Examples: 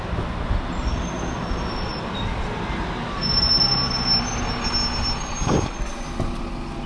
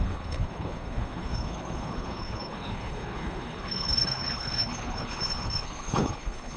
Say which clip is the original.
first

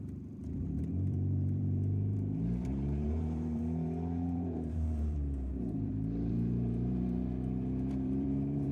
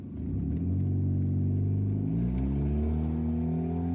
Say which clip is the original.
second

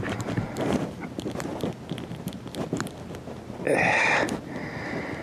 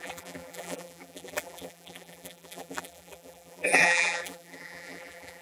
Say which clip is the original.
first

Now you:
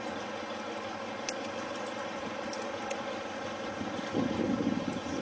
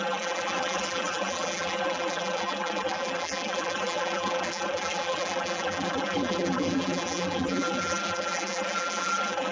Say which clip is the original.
first